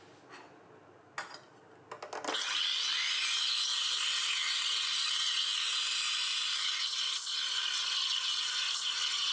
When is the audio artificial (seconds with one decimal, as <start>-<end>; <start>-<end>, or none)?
none

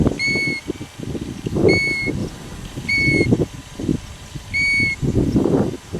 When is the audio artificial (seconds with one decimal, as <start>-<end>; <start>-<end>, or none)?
2.2-2.9

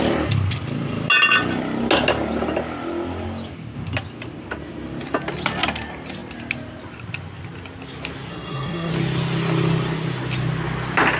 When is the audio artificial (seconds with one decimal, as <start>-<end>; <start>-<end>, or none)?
8.3-8.9

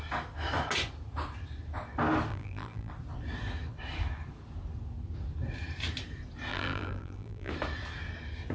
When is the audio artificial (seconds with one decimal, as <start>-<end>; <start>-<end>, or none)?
2.3-2.9; 6.5-7.5

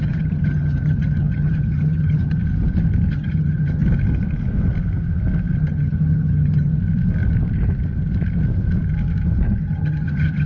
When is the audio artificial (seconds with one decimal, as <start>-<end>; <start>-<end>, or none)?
0.0-2.4; 3.1-3.8; 5.6-6.8; 9.6-10.5

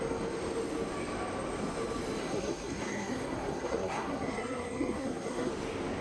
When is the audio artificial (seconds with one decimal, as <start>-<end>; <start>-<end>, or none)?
2.2-5.5

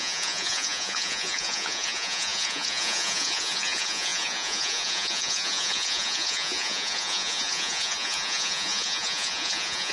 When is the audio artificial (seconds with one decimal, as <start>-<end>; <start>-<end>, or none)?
0.0-9.9

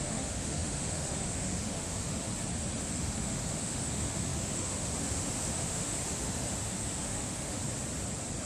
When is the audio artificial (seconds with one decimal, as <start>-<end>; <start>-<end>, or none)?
0.0-2.3; 2.8-7.6